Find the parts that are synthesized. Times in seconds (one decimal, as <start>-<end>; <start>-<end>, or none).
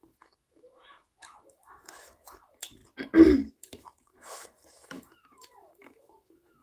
0.0-2.8; 3.5-6.6